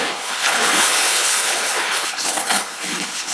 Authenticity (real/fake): fake